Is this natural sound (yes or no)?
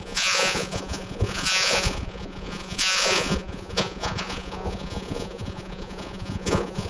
no